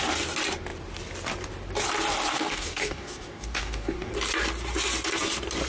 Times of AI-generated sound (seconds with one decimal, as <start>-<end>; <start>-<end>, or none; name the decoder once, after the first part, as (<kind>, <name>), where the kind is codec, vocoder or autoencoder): 2.3-4.1 (codec, DAC)